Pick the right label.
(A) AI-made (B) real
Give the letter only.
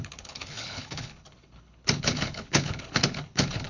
A